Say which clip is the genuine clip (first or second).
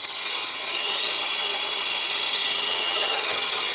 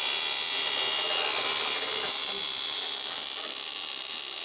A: second